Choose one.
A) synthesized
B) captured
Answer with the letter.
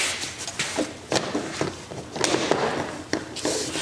B